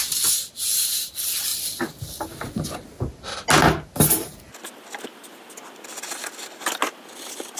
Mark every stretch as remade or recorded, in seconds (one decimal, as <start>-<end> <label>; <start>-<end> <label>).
0.0-7.6 recorded